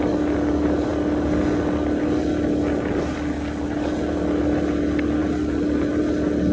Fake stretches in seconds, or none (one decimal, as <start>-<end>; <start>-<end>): none